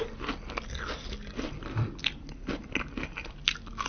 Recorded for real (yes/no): yes